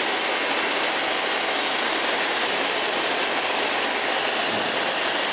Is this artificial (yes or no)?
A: no